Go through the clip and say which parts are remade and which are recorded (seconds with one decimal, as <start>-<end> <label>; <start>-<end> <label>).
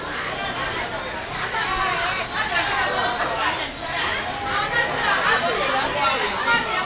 0.0-6.9 recorded